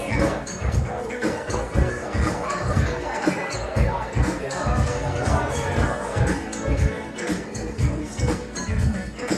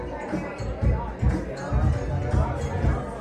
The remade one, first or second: first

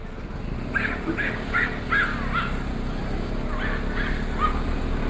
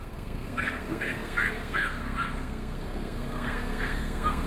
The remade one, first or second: second